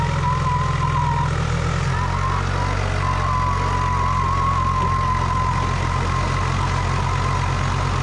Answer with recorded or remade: recorded